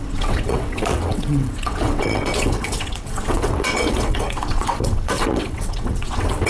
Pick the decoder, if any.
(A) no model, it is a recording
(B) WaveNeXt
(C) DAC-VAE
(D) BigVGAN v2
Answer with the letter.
B